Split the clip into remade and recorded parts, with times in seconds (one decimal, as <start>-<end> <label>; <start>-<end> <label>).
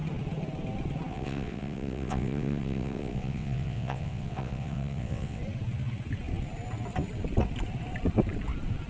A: 0.0-1.1 recorded; 1.1-5.4 remade; 5.4-8.9 recorded